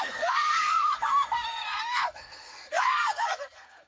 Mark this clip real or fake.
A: fake